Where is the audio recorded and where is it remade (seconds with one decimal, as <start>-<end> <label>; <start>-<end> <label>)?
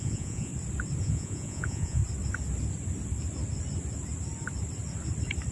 0.0-0.5 remade; 0.5-1.0 recorded; 1.0-2.0 remade; 2.0-5.5 recorded